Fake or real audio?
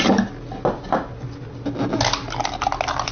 real